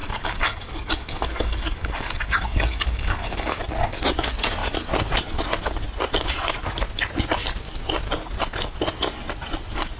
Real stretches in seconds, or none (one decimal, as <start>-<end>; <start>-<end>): 3.6-10.0